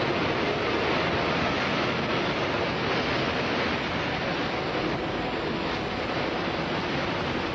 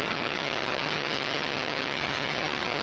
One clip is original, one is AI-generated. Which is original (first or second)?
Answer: first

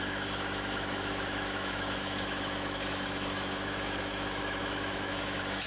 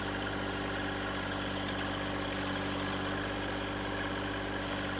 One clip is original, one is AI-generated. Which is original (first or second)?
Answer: second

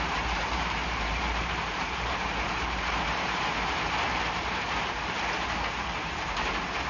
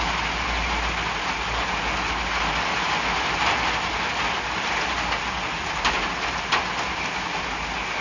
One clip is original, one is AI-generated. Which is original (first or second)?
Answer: second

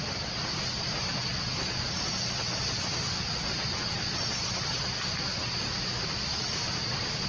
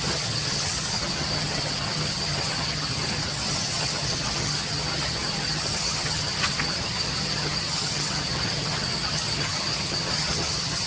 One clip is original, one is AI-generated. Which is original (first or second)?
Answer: first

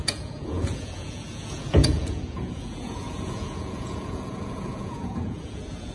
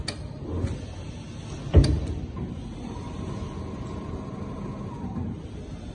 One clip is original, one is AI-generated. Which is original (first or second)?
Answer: second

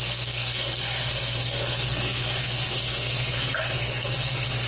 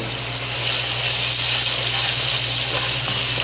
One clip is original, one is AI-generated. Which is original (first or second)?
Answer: second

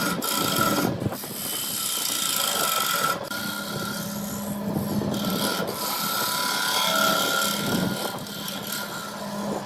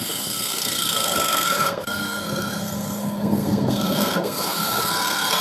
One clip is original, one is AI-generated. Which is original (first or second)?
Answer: first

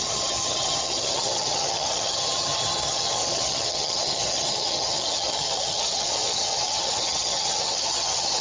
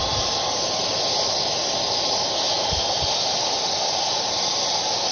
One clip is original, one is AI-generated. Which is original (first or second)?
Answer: second